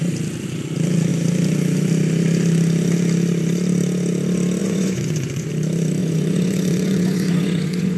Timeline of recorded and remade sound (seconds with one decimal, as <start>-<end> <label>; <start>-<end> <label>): 0.0-4.6 recorded; 4.6-5.5 remade; 5.5-6.0 recorded; 6.0-8.0 remade